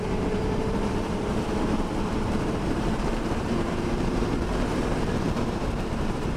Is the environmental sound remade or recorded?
remade